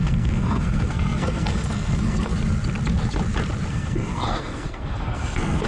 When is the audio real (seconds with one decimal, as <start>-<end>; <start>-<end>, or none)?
2.3-3.7